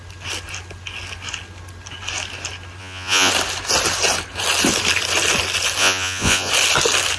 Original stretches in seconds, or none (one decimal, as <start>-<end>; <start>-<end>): 0.0-2.8; 3.3-5.8; 6.5-7.2